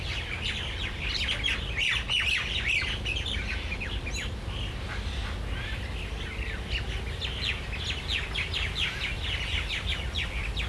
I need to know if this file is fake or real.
real